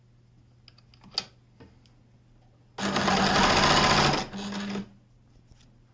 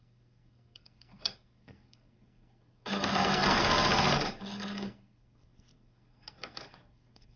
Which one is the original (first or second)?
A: first